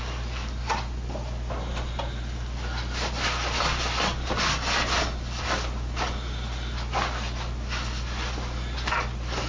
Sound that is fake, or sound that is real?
real